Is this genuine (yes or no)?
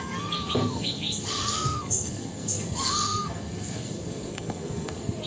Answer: no